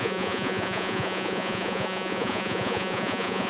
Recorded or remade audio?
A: remade